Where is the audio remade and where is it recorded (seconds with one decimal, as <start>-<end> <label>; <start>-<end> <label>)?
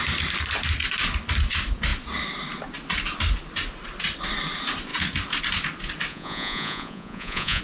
0.0-6.1 recorded; 6.1-7.6 remade